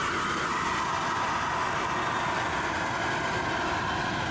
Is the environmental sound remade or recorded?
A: recorded